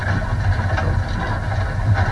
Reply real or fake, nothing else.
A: fake